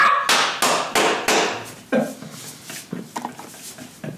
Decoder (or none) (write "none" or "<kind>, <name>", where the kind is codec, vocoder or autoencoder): none